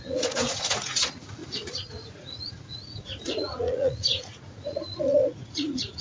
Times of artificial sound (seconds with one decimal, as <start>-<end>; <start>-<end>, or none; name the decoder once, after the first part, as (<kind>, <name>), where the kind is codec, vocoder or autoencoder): 0.0-6.0 (vocoder, Vocos)